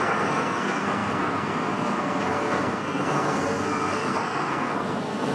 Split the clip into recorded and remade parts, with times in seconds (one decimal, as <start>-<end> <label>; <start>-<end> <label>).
0.0-5.3 remade